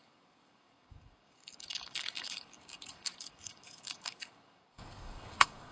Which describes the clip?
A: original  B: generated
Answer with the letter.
B